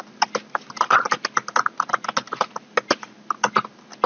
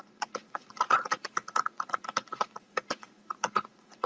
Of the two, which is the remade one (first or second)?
second